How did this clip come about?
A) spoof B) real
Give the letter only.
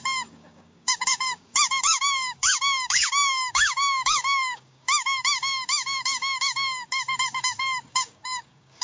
A